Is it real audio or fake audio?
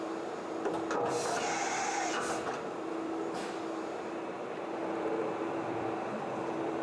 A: fake